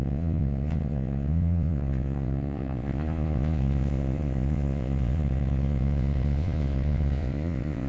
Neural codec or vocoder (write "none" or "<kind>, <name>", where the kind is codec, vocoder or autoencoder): vocoder, Vocos